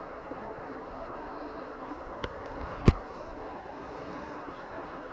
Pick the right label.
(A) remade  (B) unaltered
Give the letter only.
A